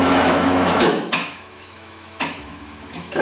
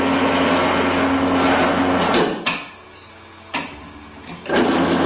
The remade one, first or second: first